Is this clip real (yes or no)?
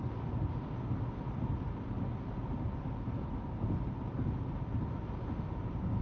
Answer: yes